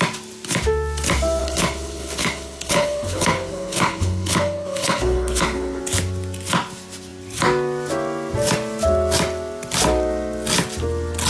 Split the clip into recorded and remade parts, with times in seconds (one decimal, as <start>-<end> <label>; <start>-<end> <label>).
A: 0.0-1.4 recorded; 1.4-5.8 remade; 5.8-11.3 recorded